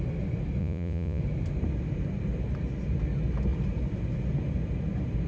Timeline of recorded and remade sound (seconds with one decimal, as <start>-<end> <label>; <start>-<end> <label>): 0.0-0.6 recorded; 0.6-1.2 remade; 1.2-5.3 recorded